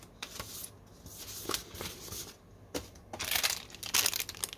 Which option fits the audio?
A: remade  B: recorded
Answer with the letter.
B